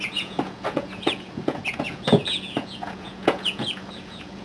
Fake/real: fake